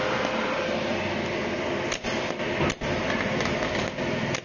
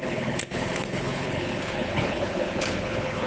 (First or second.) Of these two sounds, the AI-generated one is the second